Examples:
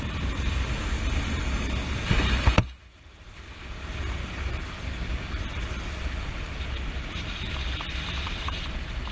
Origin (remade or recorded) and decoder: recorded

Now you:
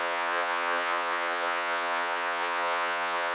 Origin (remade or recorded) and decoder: remade, vocoder, Vocos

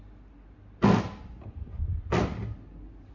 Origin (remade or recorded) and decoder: recorded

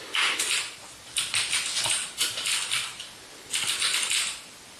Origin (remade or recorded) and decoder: recorded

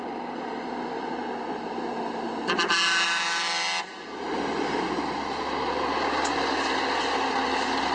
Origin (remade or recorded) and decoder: recorded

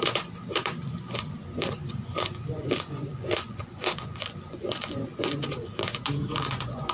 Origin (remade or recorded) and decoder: remade, vocoder, Vocos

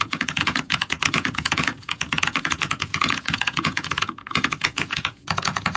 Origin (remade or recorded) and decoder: remade, vocoder, Vocos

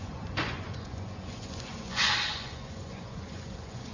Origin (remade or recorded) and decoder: remade, vocoder, Vocos